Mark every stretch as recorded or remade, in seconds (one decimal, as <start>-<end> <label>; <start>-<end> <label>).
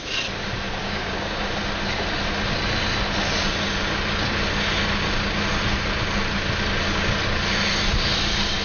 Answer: 0.0-0.8 recorded; 0.8-1.4 remade; 1.4-8.6 recorded